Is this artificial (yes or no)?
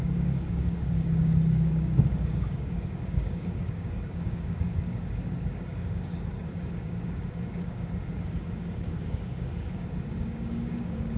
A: yes